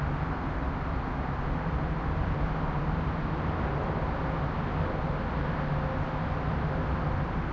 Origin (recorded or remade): recorded